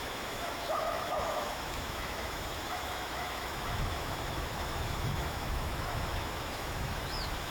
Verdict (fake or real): fake